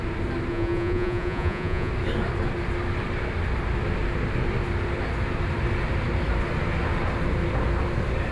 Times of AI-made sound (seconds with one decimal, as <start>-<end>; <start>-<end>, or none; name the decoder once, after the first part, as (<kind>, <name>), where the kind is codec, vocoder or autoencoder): 0.5-1.9 (vocoder, Vocos)